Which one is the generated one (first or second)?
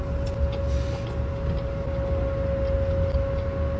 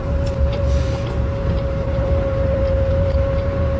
second